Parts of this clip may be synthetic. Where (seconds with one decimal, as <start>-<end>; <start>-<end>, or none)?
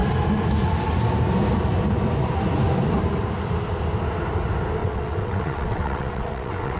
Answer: 4.8-6.8